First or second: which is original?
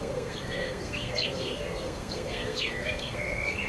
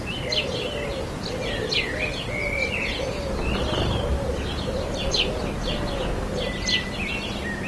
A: second